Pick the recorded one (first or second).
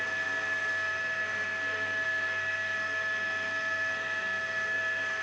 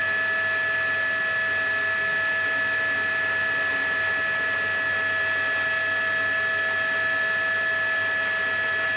second